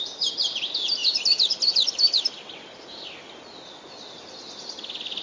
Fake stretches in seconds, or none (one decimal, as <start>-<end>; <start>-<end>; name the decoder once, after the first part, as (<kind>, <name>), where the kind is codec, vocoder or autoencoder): none